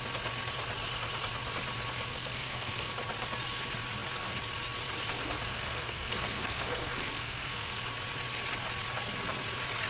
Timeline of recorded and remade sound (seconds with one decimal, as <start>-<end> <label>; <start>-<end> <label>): 0.0-2.1 recorded; 2.1-2.9 remade; 2.9-5.5 recorded; 5.5-7.7 remade; 7.7-9.9 recorded